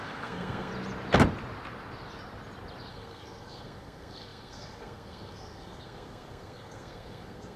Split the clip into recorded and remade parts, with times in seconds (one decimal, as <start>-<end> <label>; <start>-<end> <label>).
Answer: 0.0-0.7 remade; 0.7-2.9 recorded; 2.9-7.6 remade